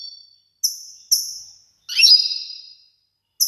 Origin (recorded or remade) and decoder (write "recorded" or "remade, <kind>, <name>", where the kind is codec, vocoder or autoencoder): recorded